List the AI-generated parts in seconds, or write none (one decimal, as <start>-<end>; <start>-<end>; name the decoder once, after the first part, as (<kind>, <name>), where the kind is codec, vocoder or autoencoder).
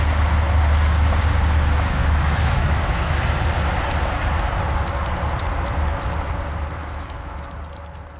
2.0-3.2 (autoencoder, DAC-VAE); 6.8-7.4